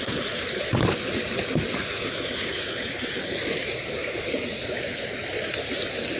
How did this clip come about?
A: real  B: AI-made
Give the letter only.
A